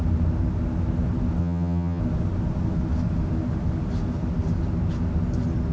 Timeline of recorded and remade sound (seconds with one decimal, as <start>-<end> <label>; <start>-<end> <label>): 0.0-1.4 recorded; 1.4-2.0 remade; 2.0-5.7 recorded